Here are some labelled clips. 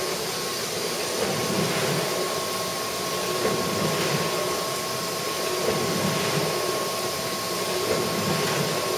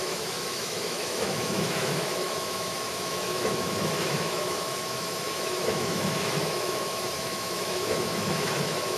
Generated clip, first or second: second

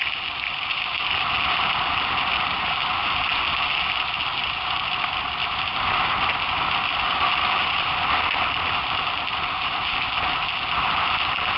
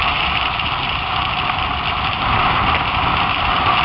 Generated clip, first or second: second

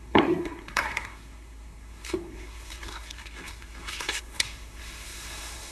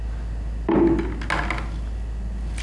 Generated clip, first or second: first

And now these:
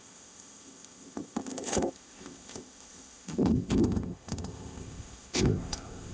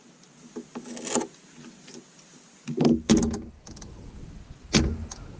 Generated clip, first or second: first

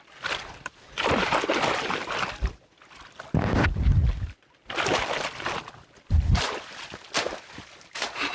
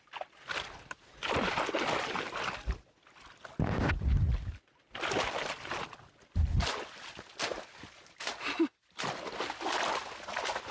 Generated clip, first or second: first